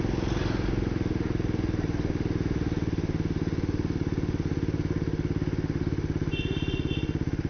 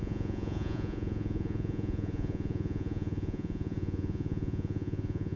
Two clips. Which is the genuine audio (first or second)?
first